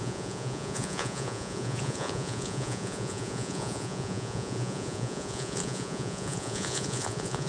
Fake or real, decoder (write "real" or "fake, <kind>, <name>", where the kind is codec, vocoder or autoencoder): fake, vocoder, Vocos